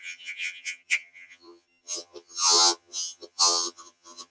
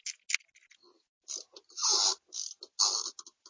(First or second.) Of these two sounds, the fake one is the first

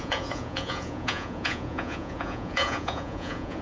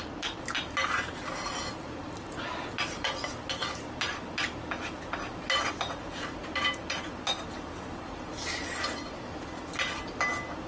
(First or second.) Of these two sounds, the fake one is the first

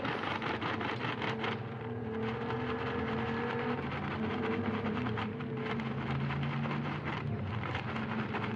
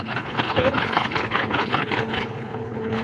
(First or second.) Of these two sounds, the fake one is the second